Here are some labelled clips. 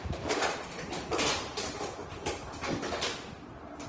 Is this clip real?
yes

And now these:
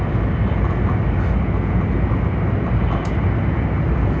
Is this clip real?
yes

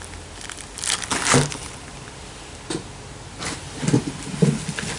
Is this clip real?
yes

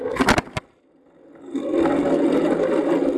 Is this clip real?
yes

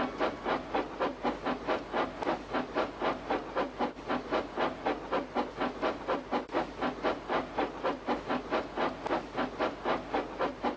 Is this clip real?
yes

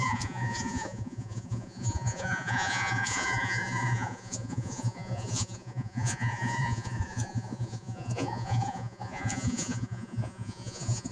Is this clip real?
no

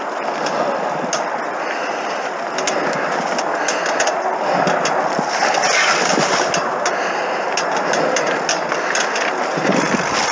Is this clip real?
yes